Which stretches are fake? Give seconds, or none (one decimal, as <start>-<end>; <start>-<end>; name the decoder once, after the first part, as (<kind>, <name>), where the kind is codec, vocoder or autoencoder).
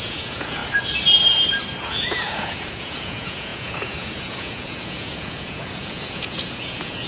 0.0-0.6 (vocoder, Vocos); 1.8-7.1